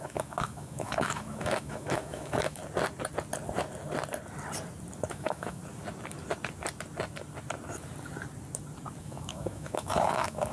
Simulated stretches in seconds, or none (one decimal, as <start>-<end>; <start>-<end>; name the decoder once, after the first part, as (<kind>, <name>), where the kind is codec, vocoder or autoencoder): 0.0-2.6 (autoencoder, DAC-VAE); 5.1-5.6; 9.0-10.5